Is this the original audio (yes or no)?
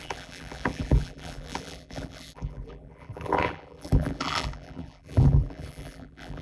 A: no